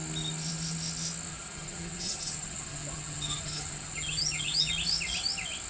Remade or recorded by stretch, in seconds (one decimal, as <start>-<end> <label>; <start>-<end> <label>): 0.0-1.3 recorded; 1.3-4.7 remade; 4.7-5.7 recorded